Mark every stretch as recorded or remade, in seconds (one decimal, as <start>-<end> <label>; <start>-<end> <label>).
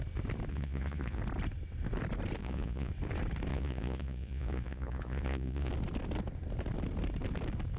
0.0-0.5 recorded; 0.5-1.2 remade; 1.2-2.4 recorded; 2.4-2.9 remade; 2.9-3.5 recorded; 3.5-5.7 remade; 5.7-7.8 recorded